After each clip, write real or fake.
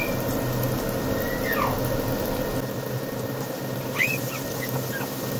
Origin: real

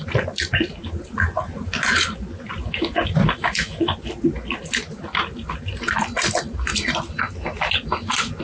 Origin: real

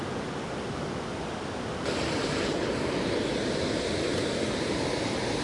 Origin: real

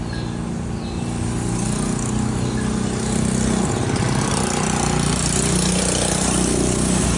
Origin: real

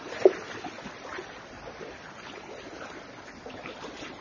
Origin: fake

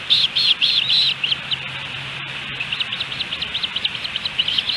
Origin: fake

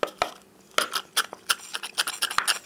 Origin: real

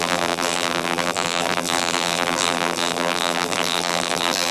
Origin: fake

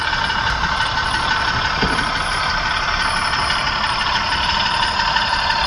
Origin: fake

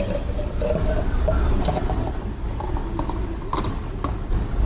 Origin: real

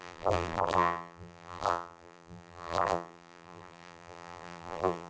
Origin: fake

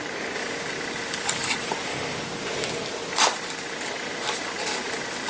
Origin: fake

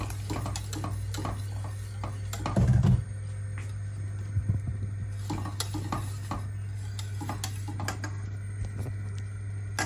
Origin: real